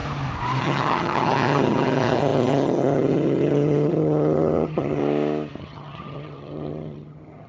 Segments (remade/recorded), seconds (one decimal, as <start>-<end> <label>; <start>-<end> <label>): 0.0-0.6 recorded; 0.6-5.0 remade; 5.0-5.6 recorded; 5.6-7.5 remade